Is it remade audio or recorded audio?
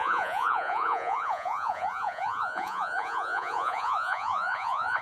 remade